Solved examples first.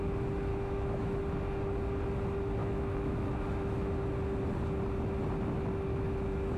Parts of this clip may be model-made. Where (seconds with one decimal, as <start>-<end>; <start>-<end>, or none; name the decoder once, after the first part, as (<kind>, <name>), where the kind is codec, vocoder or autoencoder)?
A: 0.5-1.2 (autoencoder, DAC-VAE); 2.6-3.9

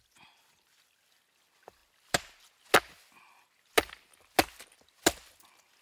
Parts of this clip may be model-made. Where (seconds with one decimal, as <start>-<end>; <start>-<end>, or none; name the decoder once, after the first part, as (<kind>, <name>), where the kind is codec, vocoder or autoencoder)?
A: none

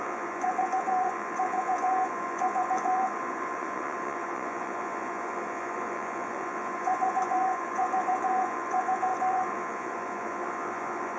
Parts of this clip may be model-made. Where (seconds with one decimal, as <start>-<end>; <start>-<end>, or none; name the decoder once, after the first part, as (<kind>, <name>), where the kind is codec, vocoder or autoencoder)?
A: 0.0-11.2 (vocoder, Vocos)